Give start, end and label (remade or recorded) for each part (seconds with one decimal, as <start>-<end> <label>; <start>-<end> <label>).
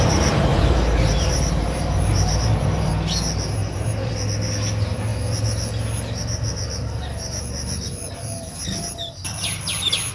0.0-0.5 recorded; 0.5-2.9 remade; 2.9-3.6 recorded; 3.6-4.1 remade; 4.1-10.1 recorded